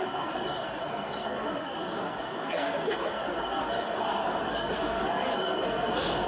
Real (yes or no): no